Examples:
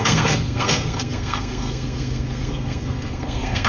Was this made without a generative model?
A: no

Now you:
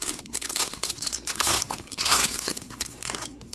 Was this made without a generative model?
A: no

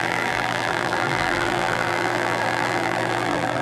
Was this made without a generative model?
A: no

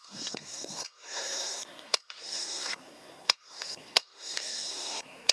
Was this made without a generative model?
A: no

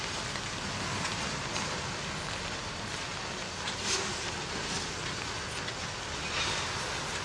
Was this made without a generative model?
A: yes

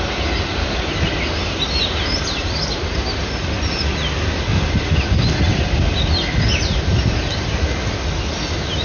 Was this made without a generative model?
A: yes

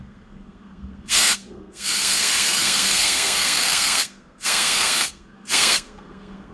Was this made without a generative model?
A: no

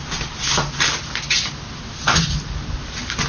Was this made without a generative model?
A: yes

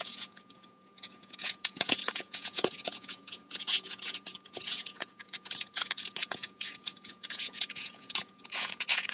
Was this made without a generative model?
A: no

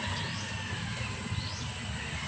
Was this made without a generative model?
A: yes